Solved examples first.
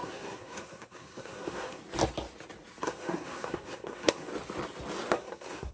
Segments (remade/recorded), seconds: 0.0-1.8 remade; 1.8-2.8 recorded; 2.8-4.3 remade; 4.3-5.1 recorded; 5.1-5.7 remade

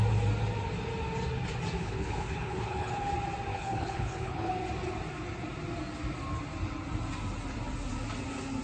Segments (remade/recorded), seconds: 0.0-1.8 recorded; 1.8-3.1 remade; 3.1-3.5 recorded; 3.5-4.5 remade; 4.5-8.6 recorded

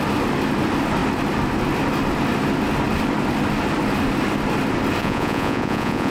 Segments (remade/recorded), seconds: 0.0-5.0 recorded; 5.0-6.1 remade